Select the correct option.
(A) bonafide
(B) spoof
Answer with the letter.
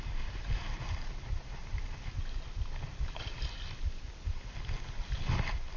A